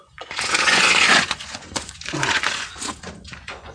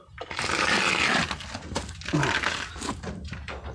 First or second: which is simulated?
first